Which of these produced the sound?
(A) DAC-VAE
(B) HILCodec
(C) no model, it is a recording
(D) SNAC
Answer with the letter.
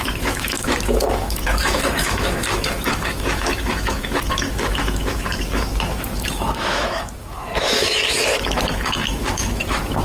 A